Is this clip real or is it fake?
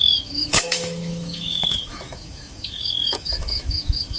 fake